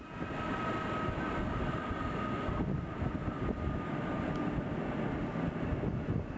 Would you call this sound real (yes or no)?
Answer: yes